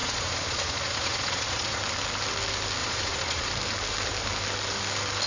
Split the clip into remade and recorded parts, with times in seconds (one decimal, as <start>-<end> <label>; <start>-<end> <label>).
0.0-1.8 remade; 1.8-2.8 recorded; 2.8-3.5 remade; 3.5-5.3 recorded